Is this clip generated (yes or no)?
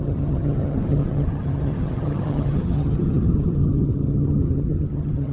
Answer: yes